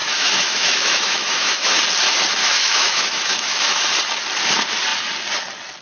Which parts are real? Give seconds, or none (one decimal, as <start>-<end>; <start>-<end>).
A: 1.8-2.4; 3.8-5.8